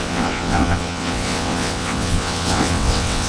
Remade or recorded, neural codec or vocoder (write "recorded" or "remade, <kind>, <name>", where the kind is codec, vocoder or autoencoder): remade, vocoder, WaveNeXt